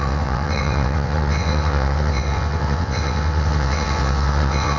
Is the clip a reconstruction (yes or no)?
yes